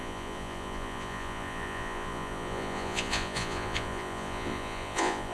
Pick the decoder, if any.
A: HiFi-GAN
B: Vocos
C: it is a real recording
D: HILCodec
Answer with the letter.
B